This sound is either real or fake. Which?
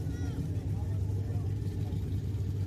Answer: real